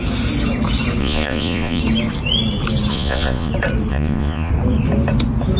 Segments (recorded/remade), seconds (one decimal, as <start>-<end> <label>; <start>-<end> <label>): 0.0-1.0 recorded; 1.0-1.8 remade; 1.8-2.9 recorded; 2.9-3.5 remade; 3.5-3.9 recorded; 3.9-4.5 remade; 4.5-5.6 recorded